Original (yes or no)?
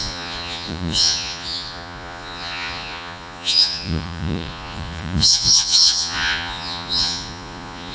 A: no